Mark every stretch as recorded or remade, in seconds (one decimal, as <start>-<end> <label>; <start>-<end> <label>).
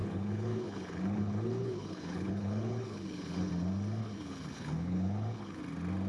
0.0-3.5 remade; 3.5-4.0 recorded; 4.0-5.6 remade; 5.6-6.1 recorded